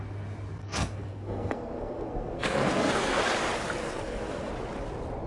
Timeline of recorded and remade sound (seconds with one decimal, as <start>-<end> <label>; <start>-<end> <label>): 0.0-0.6 recorded; 0.6-3.2 remade; 3.2-3.8 recorded; 3.8-4.5 remade; 4.5-5.3 recorded